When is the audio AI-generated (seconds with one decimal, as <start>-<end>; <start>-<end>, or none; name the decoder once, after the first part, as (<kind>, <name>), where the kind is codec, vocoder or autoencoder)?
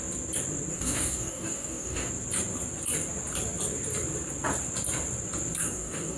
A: 0.7-2.1 (codec, DAC); 5.6-6.2